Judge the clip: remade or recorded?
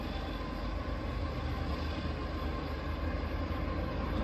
recorded